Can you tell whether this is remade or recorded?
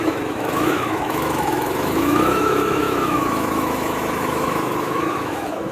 remade